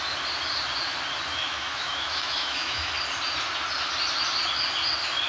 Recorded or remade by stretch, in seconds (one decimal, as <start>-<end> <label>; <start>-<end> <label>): 0.0-1.3 recorded; 1.3-2.9 remade; 2.9-5.3 recorded